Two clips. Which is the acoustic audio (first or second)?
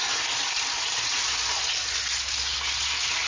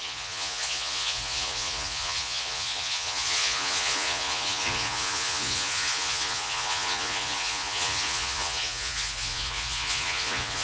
first